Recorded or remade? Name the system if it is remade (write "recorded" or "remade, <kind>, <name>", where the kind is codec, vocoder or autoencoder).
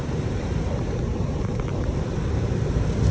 remade, vocoder, BigVGAN v2